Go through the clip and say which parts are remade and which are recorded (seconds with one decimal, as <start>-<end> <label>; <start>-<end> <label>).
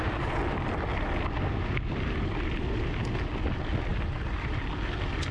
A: 0.0-5.3 recorded